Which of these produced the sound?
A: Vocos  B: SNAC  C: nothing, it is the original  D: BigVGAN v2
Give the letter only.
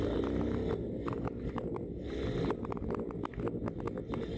C